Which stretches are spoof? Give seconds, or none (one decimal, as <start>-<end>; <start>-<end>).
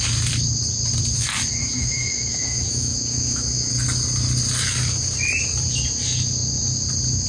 1.6-3.7